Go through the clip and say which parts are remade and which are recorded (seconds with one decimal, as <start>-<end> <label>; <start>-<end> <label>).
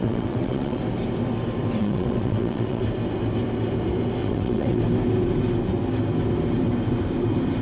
0.0-0.8 remade; 0.8-1.8 recorded; 1.8-2.8 remade; 2.8-4.2 recorded; 4.2-4.8 remade; 4.8-7.6 recorded